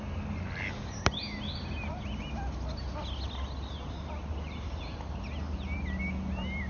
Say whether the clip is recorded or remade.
recorded